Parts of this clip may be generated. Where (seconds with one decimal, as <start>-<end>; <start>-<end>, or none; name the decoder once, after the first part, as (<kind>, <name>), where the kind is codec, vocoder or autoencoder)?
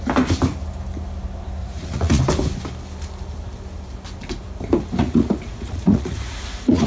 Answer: 1.6-2.2 (vocoder, Vocos); 5.0-6.9